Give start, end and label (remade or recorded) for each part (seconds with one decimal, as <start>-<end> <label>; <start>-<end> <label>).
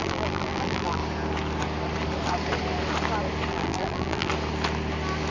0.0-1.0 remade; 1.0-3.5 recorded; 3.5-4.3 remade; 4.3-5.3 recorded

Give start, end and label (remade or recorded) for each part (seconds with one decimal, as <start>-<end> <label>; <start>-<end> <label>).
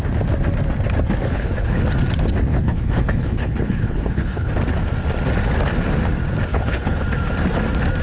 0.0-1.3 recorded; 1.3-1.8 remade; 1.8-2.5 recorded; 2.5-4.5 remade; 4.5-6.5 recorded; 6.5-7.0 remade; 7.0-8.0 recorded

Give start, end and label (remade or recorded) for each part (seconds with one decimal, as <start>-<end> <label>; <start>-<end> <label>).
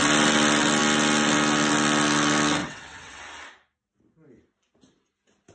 0.0-2.6 recorded; 2.6-3.2 remade; 3.2-5.5 recorded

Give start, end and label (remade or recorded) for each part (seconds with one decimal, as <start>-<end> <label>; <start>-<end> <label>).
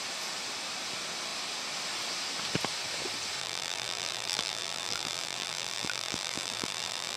0.0-3.4 recorded; 3.4-7.2 remade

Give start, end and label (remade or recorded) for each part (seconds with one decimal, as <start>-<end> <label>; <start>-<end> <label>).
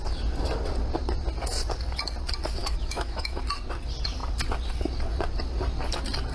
0.0-2.6 recorded; 2.6-3.4 remade; 3.4-6.3 recorded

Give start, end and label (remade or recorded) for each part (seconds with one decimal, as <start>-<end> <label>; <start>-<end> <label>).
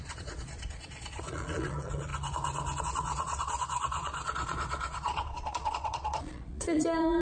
0.0-2.1 remade; 2.1-2.8 recorded; 2.8-7.2 remade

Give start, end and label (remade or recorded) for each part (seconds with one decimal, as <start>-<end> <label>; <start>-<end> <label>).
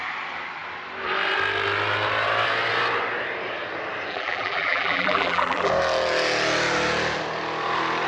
0.0-4.1 recorded; 4.1-5.7 remade; 5.7-8.1 recorded